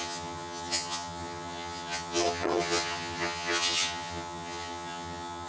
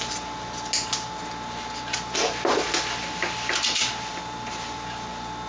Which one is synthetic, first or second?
first